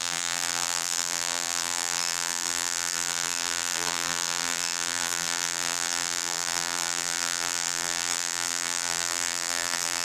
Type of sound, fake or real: fake